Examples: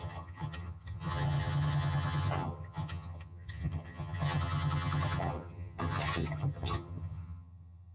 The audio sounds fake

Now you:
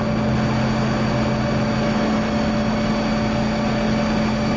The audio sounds real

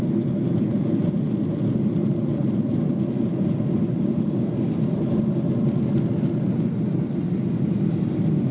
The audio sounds real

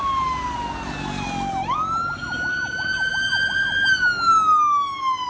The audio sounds real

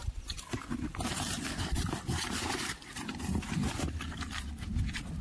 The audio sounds real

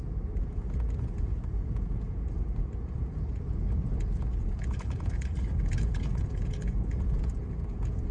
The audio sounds fake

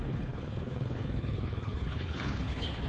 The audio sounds fake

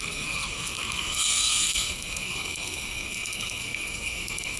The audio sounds fake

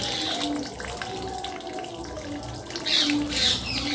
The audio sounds real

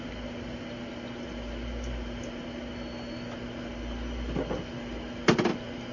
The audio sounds real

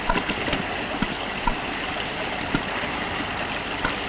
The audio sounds real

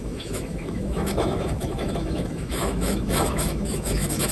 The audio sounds fake